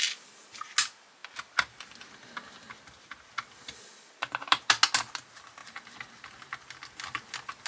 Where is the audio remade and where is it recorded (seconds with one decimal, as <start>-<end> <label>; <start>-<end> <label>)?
0.0-7.7 recorded

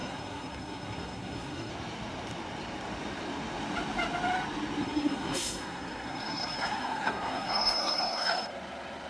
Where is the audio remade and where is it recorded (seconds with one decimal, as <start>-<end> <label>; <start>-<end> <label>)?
0.0-1.7 remade; 1.7-4.8 recorded; 4.8-8.5 remade; 8.5-9.1 recorded

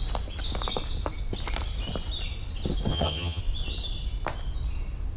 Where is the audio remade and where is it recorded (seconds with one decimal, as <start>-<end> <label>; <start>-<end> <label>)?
0.0-2.9 recorded; 2.9-3.4 remade; 3.4-5.2 recorded